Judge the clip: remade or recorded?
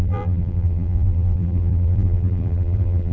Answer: remade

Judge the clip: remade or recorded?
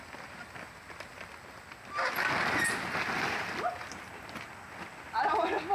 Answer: recorded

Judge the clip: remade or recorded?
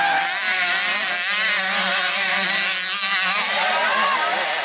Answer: recorded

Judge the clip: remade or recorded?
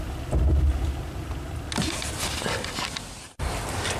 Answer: recorded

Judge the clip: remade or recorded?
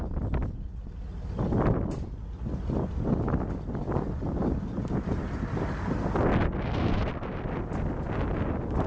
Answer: recorded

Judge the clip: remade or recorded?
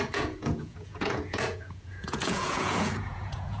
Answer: remade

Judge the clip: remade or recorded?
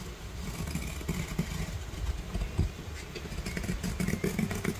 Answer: recorded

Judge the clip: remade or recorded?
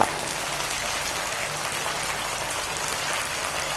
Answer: recorded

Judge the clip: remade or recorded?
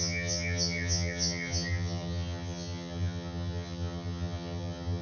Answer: remade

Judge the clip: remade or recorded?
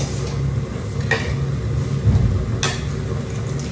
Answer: recorded